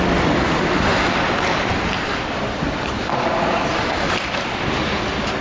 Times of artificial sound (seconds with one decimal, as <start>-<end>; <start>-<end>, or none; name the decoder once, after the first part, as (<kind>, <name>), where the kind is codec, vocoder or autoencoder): none